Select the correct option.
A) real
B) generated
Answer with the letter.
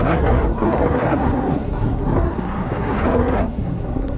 B